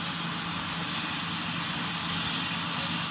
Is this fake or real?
real